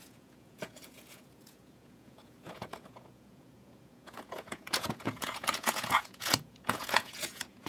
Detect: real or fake fake